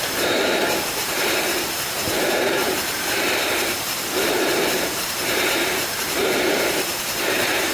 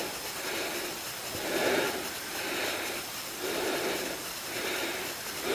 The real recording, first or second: second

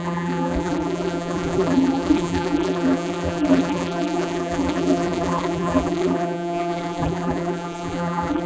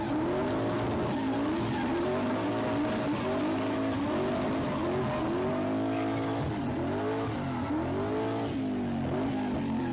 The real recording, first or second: second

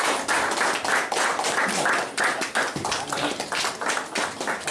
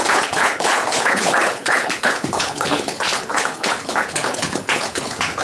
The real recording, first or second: first